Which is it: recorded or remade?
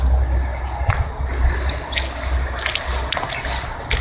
recorded